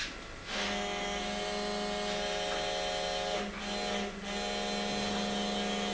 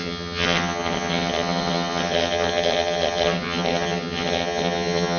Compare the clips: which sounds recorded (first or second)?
first